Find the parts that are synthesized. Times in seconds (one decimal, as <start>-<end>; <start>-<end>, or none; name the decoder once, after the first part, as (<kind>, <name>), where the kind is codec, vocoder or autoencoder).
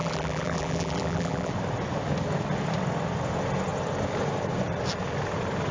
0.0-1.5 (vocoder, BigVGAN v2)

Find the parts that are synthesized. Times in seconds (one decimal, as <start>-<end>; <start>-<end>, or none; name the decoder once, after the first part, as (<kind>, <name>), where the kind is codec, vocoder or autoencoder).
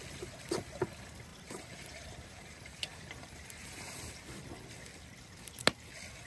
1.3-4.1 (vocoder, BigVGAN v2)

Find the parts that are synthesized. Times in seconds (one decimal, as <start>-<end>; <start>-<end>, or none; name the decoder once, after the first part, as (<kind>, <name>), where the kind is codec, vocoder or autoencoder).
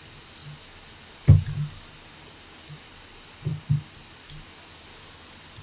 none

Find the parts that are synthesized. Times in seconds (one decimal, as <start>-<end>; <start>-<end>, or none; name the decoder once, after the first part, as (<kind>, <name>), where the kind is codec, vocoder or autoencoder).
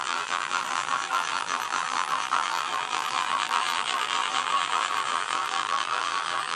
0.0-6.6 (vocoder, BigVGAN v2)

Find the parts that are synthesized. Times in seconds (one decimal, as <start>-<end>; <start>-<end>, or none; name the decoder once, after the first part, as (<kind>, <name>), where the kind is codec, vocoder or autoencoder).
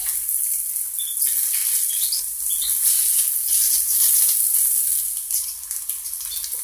none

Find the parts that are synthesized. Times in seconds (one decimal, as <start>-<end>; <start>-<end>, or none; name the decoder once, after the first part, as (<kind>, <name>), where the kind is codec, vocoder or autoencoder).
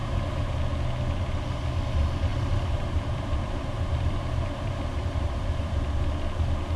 0.0-0.6 (vocoder, BigVGAN v2); 2.3-5.9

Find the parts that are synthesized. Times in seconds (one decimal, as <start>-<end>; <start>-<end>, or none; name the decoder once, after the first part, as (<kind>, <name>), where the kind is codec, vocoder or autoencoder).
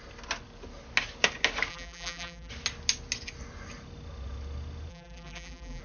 1.7-2.5 (vocoder, BigVGAN v2); 4.9-5.8